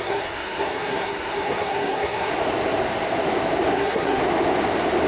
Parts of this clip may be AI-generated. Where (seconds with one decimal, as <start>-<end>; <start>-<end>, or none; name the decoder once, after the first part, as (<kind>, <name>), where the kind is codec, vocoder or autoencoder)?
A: 0.0-2.3 (codec, SNAC); 3.7-4.2